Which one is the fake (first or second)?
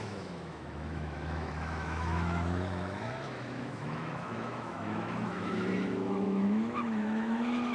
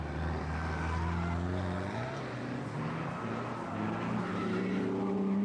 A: first